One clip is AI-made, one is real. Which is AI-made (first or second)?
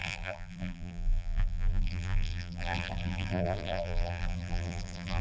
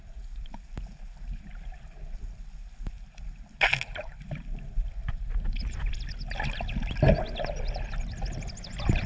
first